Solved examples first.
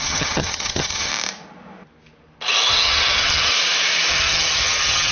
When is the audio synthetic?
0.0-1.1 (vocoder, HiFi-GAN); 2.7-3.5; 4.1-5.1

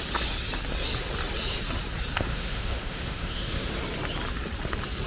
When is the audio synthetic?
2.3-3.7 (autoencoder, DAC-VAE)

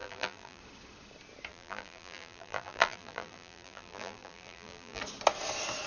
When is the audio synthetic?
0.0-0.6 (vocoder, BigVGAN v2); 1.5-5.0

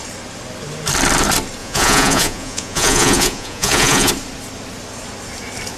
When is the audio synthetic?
1.6-4.1 (vocoder, Vocos)

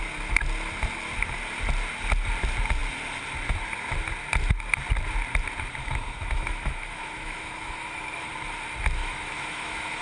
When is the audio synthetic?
5.8-8.3 (autoencoder, DAC-VAE); 9.0-10.0